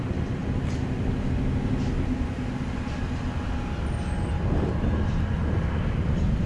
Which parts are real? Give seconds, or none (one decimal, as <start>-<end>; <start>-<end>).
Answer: 0.4-4.3

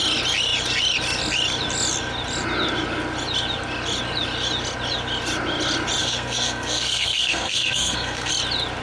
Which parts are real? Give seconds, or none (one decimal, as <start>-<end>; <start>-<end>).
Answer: 0.0-6.0; 8.3-8.8

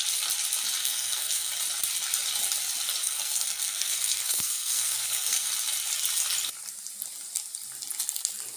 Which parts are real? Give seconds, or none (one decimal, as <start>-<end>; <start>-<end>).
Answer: 0.0-0.8; 1.5-3.0; 5.5-8.6

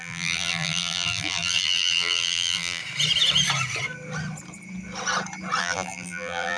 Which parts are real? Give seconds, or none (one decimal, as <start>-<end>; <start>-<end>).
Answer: 2.8-5.6

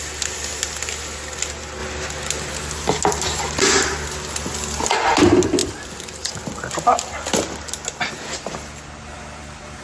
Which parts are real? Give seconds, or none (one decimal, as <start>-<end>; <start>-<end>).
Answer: 0.0-9.8